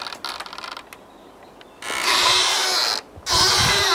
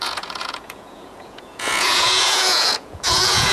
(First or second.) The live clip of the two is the first